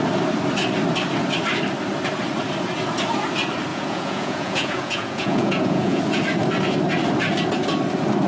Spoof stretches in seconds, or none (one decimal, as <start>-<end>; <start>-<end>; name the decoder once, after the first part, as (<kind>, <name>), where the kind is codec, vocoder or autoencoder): 3.7-6.0 (vocoder, Vocos)